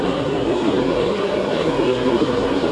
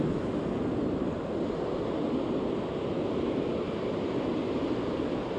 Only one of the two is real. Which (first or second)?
second